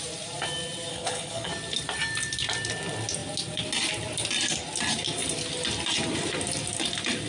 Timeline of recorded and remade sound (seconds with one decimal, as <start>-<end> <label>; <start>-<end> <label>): 0.0-0.9 recorded; 0.9-1.5 remade; 1.5-7.3 recorded